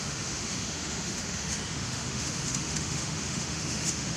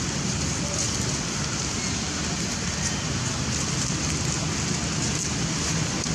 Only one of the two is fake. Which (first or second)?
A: first